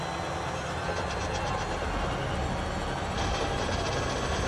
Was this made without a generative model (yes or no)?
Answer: yes